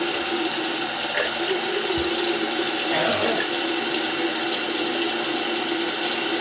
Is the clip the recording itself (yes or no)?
yes